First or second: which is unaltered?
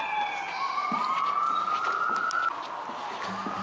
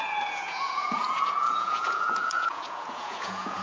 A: first